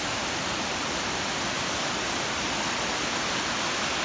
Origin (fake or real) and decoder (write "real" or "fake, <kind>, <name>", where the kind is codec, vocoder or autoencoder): real